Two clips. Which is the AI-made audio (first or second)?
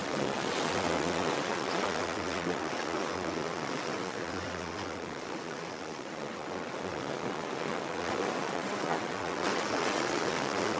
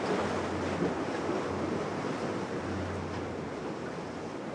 first